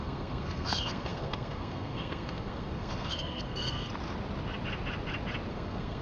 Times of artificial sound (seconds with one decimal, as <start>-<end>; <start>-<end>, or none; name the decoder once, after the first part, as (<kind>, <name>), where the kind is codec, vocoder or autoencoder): 0.0-3.9 (codec, SNAC); 5.5-6.0